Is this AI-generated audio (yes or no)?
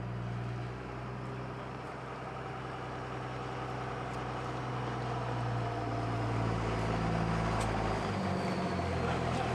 no